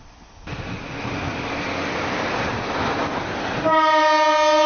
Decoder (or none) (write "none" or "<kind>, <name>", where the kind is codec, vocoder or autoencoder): none